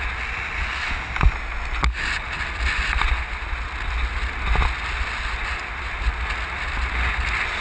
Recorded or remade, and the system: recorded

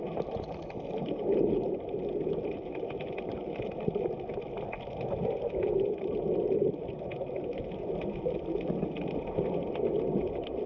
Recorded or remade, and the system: recorded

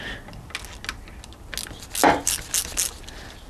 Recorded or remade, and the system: recorded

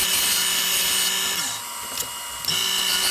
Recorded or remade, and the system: recorded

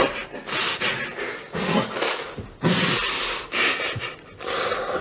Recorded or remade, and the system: recorded